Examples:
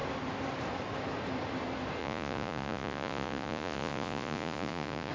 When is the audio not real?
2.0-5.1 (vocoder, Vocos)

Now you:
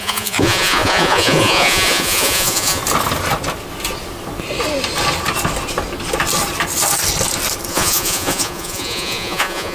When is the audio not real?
0.0-2.8 (vocoder, Vocos); 7.7-9.7

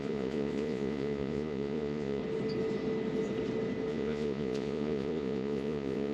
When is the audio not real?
0.0-2.2 (vocoder, Vocos); 3.9-6.1

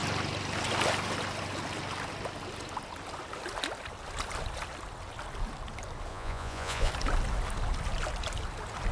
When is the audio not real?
6.1-6.9 (vocoder, Vocos)